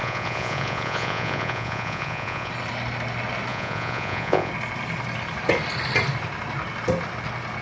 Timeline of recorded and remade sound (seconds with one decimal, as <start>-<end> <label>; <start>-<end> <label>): 0.0-2.5 remade; 2.5-3.5 recorded; 3.5-4.5 remade; 4.5-7.6 recorded